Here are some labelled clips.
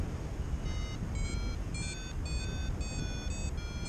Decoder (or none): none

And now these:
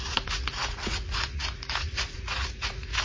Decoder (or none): vocoder, Vocos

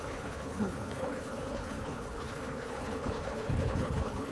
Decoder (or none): codec, HILCodec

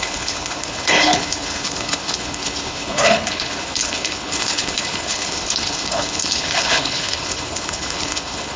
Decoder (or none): codec, HILCodec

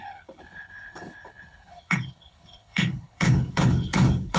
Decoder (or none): codec, HILCodec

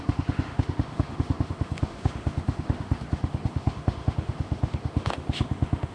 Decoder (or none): autoencoder, DAC-VAE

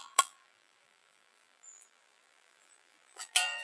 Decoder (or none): vocoder, BigVGAN v2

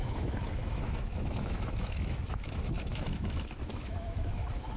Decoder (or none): autoencoder, DAC-VAE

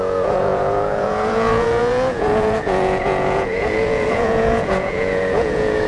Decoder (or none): vocoder, Vocos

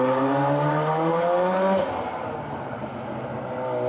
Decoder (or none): none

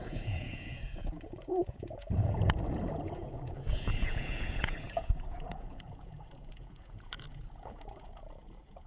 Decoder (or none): vocoder, Vocos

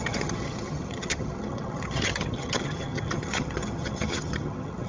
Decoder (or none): vocoder, HiFi-GAN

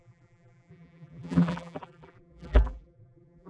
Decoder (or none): vocoder, BigVGAN v2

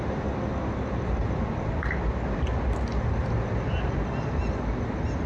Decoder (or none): none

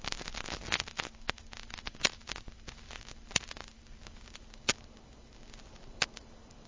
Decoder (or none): none